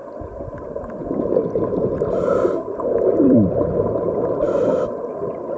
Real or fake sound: real